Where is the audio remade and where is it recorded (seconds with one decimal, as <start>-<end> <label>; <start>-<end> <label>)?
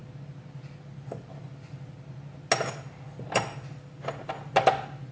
0.0-5.1 recorded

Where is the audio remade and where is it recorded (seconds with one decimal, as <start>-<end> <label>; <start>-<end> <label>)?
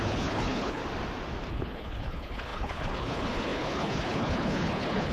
0.0-0.8 remade; 0.8-1.5 recorded; 1.5-5.1 remade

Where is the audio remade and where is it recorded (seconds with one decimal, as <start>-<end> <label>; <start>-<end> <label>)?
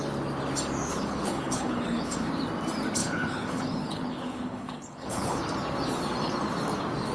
0.0-0.9 recorded; 0.9-2.3 remade; 2.3-3.0 recorded; 3.0-5.4 remade; 5.4-7.1 recorded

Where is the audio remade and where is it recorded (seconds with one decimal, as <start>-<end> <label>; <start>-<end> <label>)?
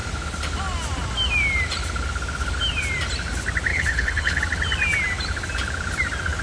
0.0-3.7 recorded; 3.7-4.4 remade; 4.4-6.4 recorded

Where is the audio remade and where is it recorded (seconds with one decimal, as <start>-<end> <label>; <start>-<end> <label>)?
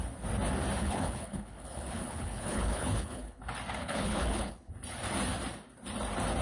0.0-0.8 recorded; 0.8-3.4 remade; 3.4-3.8 recorded; 3.8-4.7 remade; 4.7-6.4 recorded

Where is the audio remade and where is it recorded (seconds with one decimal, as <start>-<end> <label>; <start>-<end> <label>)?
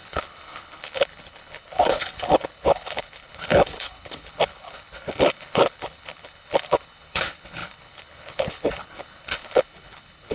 0.0-10.3 remade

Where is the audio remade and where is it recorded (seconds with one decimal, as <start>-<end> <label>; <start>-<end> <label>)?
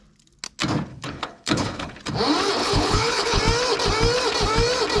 0.0-0.9 recorded; 0.9-2.0 remade; 2.0-2.6 recorded; 2.6-3.4 remade; 3.4-5.0 recorded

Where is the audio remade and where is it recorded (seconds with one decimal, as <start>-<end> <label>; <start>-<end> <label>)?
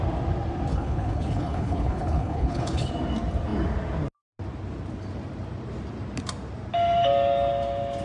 0.0-0.7 recorded; 0.7-2.9 remade; 2.9-8.0 recorded